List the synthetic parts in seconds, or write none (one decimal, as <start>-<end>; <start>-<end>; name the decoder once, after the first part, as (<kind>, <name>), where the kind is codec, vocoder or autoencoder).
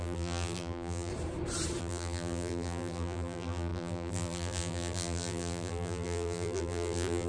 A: 0.0-1.1 (vocoder, BigVGAN v2); 1.8-7.3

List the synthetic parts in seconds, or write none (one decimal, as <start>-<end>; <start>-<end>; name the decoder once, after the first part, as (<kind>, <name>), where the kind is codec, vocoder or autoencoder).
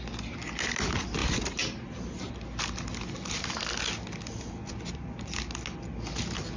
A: 1.2-2.3 (vocoder, BigVGAN v2)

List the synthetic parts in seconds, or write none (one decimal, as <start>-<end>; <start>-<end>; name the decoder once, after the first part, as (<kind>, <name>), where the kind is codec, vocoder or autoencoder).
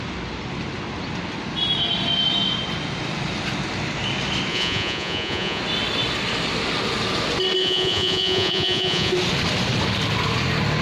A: 4.5-5.6 (vocoder, Vocos); 7.6-9.1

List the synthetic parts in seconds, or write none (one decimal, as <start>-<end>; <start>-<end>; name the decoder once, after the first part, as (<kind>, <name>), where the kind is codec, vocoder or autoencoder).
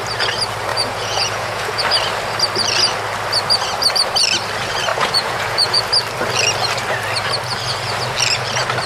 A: 0.7-1.8 (vocoder, Vocos); 4.9-5.8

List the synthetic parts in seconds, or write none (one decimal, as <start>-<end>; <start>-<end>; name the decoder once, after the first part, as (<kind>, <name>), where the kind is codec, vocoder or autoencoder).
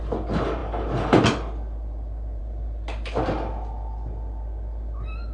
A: none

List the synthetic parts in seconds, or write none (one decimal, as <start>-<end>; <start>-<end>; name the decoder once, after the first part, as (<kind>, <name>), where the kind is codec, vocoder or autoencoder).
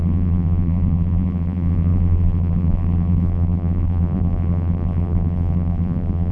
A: 0.0-6.3 (vocoder, BigVGAN v2)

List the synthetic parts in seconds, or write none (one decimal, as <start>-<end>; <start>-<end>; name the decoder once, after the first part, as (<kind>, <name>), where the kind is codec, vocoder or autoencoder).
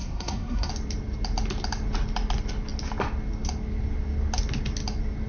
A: 0.0-0.7 (codec, SNAC)